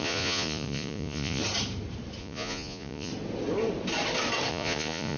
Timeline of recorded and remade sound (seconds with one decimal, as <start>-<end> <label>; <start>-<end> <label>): 0.0-1.4 remade; 1.4-2.2 recorded; 2.2-3.1 remade; 3.1-4.5 recorded; 4.5-5.2 remade